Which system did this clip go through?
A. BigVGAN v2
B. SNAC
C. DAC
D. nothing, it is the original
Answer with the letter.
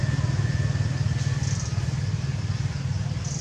D